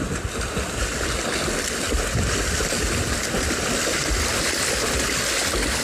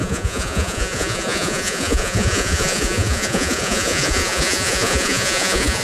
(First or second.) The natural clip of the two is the first